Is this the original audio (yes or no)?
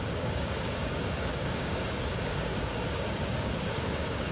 no